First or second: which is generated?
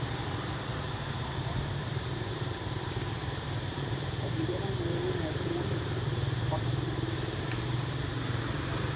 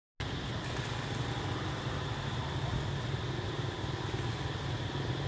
first